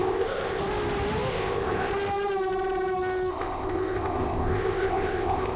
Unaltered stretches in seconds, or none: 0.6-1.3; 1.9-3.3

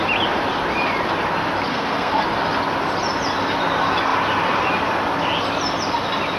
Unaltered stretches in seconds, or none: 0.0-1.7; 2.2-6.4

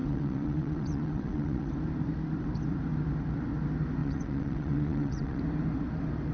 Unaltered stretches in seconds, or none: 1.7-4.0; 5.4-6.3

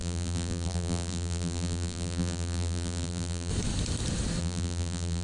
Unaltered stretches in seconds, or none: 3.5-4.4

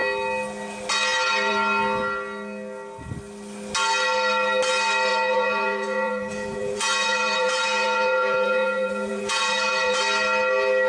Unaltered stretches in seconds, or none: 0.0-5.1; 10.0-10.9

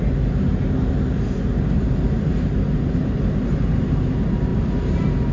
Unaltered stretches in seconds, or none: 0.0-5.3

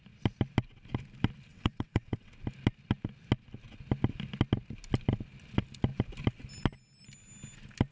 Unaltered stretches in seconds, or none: 0.0-1.5; 2.3-7.9

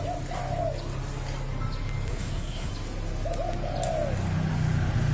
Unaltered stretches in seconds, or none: 0.0-2.1; 2.7-5.1